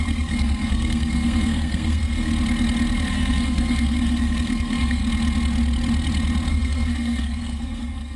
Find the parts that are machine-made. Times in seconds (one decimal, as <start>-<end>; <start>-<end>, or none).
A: 0.0-2.3; 3.1-5.0; 6.5-8.2